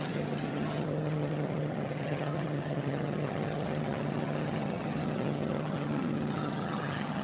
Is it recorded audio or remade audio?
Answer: remade